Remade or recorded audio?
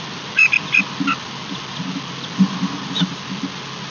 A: recorded